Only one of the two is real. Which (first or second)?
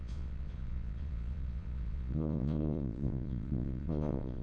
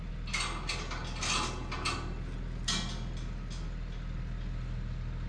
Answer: second